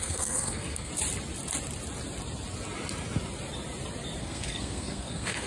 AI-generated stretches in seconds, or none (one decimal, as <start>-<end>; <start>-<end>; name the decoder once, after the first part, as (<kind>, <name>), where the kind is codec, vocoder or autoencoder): 0.0-0.9 (codec, SNAC); 4.2-5.5